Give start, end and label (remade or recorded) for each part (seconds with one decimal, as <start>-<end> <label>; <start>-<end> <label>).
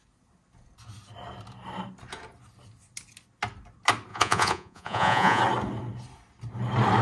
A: 0.0-4.1 recorded; 4.1-5.4 remade; 5.4-7.0 recorded